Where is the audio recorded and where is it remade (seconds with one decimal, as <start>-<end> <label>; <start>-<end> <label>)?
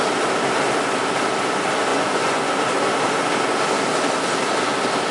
0.0-1.9 recorded; 1.9-2.5 remade; 2.5-5.1 recorded